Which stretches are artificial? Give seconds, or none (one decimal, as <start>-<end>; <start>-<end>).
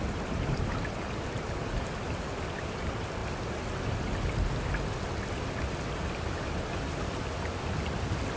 none